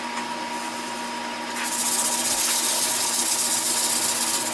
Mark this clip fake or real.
real